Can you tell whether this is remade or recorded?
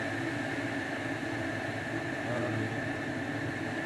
recorded